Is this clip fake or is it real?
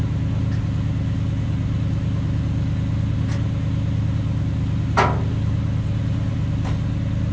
real